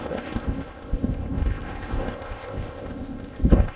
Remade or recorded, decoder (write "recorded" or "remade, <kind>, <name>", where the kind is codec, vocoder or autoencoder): remade, codec, ZipCodec